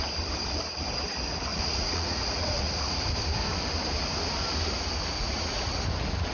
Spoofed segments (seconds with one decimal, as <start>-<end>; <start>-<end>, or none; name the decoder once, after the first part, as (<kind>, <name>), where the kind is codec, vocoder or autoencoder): 1.5-3.1 (vocoder, Vocos); 5.2-5.8